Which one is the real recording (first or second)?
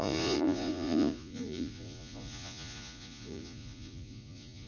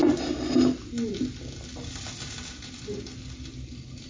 second